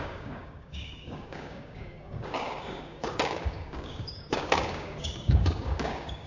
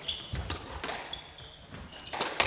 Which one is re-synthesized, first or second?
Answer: first